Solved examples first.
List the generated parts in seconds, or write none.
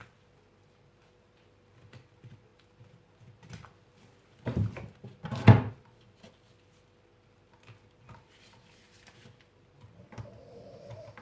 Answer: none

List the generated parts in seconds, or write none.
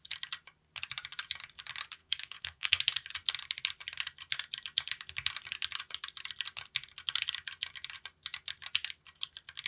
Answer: 2.0-2.8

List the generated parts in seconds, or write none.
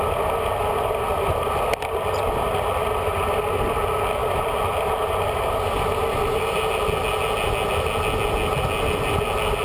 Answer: none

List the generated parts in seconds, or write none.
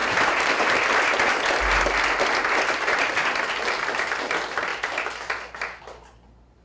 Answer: 0.0-0.7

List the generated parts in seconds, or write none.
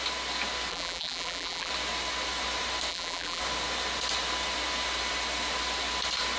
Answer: 0.7-1.7; 2.9-3.4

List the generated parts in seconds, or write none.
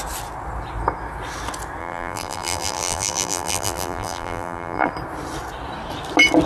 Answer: 1.8-4.9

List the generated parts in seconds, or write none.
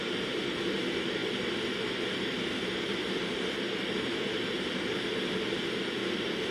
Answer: none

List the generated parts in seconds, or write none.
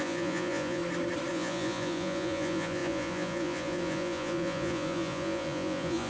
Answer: 0.0-0.8; 1.3-6.1